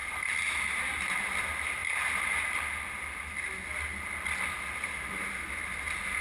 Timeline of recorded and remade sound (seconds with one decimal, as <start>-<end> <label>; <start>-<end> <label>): 0.0-6.2 recorded